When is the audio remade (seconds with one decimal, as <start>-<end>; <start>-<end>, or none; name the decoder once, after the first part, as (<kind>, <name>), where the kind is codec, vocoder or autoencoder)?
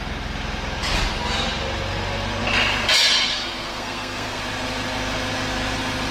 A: 3.3-4.4 (codec, SNAC)